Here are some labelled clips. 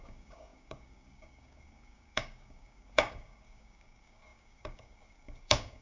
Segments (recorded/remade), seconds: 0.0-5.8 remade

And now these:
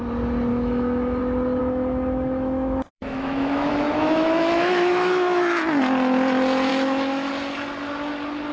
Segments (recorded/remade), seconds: 0.0-0.5 recorded; 0.5-1.2 remade; 1.2-1.6 recorded; 1.6-5.6 remade; 5.6-6.7 recorded; 6.7-7.3 remade; 7.3-8.5 recorded